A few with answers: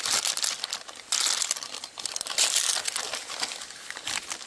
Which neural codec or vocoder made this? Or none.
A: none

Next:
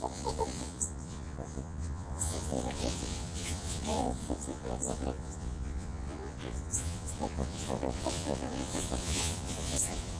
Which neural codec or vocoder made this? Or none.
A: vocoder, Vocos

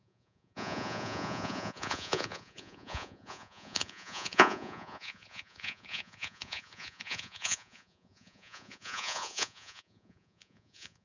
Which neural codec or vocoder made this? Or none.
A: vocoder, Vocos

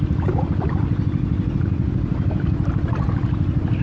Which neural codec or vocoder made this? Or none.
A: none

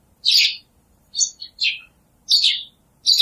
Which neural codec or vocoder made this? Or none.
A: none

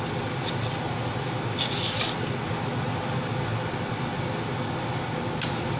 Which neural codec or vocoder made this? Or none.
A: none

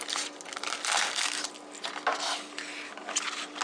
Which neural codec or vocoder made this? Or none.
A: none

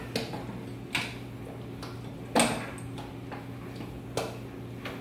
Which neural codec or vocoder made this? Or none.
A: none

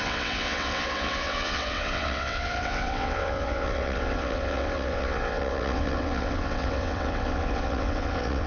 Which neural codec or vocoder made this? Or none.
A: vocoder, WaveNeXt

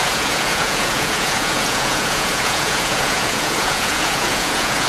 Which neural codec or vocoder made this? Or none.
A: vocoder, Vocos